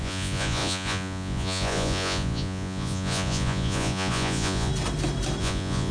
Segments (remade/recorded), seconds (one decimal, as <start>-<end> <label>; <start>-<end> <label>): 0.0-4.7 remade; 4.7-5.4 recorded; 5.4-5.9 remade